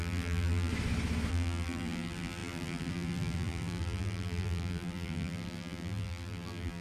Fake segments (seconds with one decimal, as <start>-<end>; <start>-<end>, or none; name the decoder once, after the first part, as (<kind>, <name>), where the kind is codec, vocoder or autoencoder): 0.0-0.7 (vocoder, BigVGAN v2); 1.3-6.8